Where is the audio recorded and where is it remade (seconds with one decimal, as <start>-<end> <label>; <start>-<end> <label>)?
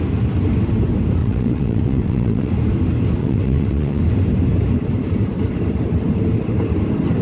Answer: 0.0-1.2 recorded; 1.2-2.5 remade; 2.5-3.2 recorded; 3.2-4.0 remade; 4.0-7.2 recorded